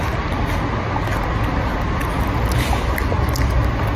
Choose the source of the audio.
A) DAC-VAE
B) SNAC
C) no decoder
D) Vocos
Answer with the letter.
C